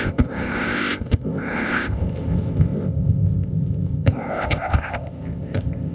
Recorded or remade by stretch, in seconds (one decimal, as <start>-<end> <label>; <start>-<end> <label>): 0.0-5.9 remade